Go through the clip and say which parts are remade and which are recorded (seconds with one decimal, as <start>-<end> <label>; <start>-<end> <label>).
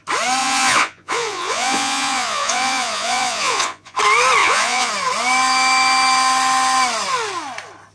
0.0-0.4 recorded; 0.4-4.0 remade; 4.0-4.4 recorded; 4.4-4.9 remade; 4.9-7.9 recorded